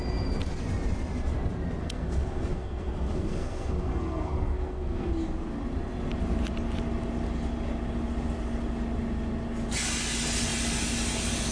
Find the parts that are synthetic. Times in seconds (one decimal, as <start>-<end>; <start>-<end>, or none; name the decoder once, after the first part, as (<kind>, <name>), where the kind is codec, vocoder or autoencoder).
1.8-5.1 (codec, SNAC)